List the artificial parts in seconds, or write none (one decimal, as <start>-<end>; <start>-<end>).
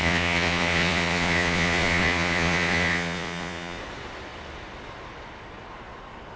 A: 0.0-3.8